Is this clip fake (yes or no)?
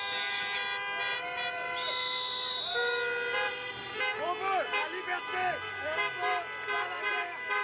no